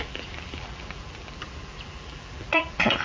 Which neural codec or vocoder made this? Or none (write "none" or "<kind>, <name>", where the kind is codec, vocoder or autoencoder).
vocoder, BigVGAN v2